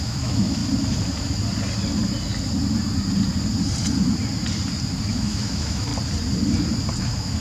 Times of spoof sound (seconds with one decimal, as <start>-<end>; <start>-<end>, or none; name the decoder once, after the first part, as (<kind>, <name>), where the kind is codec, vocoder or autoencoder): 0.0-0.6 (autoencoder, DAC-VAE); 5.0-5.9; 7.0-7.4